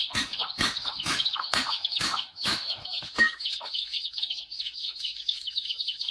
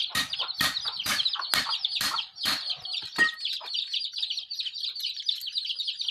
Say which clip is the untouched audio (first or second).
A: second